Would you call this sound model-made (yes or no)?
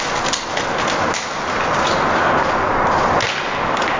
no